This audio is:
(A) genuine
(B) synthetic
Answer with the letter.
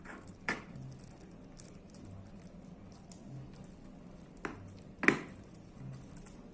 A